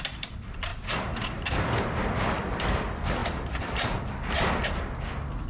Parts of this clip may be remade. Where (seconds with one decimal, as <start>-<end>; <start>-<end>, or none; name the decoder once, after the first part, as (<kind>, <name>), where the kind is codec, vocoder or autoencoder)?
0.7-1.6 (vocoder, BigVGAN v2); 3.2-4.0